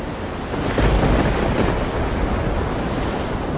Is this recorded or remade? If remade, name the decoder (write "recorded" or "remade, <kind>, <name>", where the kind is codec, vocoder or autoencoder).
recorded